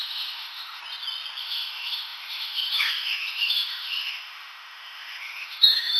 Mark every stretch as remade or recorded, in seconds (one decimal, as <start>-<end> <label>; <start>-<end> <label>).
0.0-0.8 remade; 0.8-1.4 recorded; 1.4-6.0 remade